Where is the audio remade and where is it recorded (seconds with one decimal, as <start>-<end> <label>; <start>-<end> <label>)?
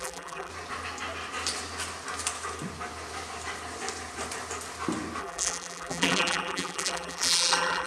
0.0-0.5 remade; 0.5-5.2 recorded; 5.2-7.9 remade